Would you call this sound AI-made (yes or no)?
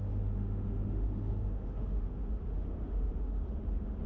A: yes